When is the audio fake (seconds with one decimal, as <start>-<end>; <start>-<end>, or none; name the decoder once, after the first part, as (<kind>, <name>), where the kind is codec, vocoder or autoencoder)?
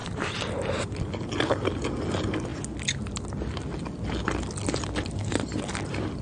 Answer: 0.0-0.9 (vocoder, BigVGAN v2)